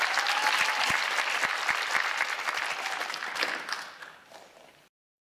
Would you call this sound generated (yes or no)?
no